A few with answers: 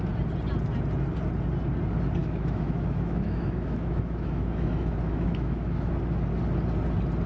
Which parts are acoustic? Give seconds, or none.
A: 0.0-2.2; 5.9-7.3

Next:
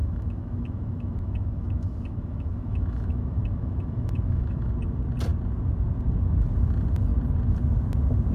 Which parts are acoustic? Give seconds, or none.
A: 4.7-8.3